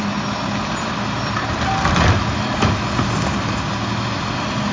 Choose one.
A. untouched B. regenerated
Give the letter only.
A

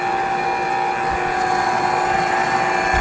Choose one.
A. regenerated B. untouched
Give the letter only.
B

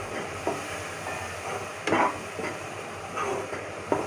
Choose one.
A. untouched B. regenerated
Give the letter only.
A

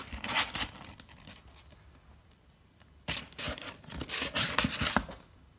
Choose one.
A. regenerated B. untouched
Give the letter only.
B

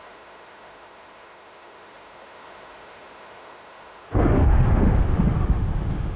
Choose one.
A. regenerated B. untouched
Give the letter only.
A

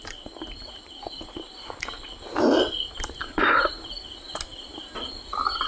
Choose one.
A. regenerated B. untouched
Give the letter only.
B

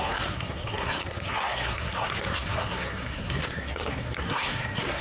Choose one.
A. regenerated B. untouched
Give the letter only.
A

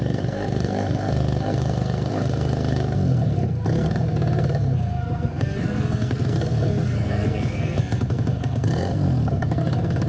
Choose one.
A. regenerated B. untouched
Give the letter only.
A